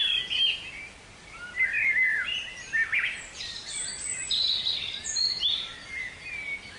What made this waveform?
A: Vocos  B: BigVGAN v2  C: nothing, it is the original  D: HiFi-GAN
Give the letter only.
C